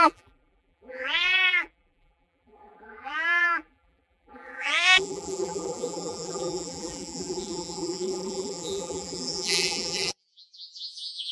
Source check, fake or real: fake